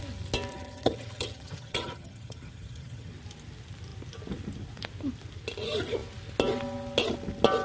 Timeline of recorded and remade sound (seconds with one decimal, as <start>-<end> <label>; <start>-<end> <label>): 0.0-0.5 recorded; 0.5-3.1 remade; 3.1-7.6 recorded